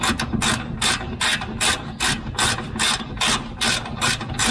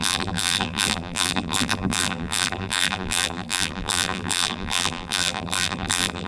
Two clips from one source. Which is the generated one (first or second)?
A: second